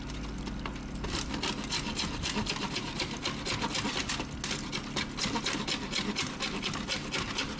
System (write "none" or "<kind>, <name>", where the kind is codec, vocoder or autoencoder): none